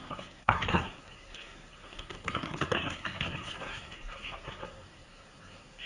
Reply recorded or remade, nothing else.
remade